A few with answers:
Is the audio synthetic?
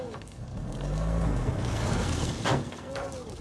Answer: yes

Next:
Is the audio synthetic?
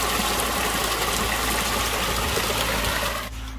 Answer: no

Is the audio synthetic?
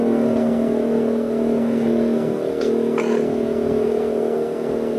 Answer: yes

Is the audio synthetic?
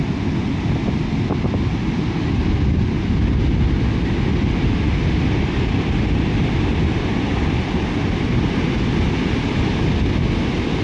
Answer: no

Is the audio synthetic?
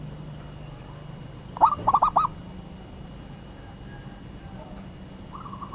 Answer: no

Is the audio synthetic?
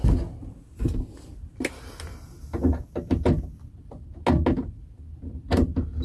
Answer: no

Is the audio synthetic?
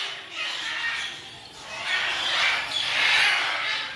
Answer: no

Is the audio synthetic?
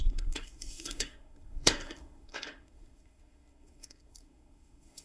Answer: yes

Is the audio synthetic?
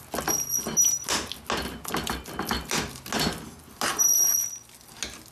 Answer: no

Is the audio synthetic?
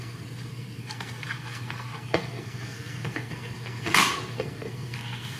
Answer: yes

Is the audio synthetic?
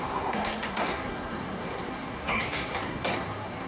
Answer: yes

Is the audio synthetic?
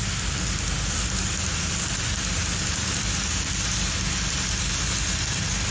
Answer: no